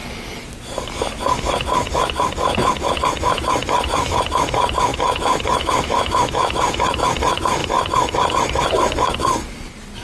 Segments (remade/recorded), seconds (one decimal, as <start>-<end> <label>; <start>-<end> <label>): 0.0-4.9 recorded; 4.9-6.8 remade; 6.8-10.0 recorded